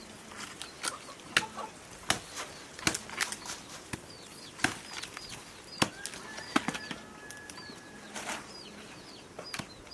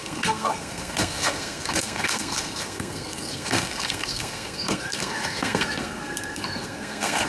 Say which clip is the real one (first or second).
first